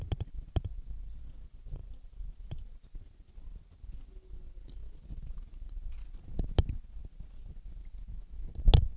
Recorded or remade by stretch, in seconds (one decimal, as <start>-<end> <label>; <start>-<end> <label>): 0.0-9.0 recorded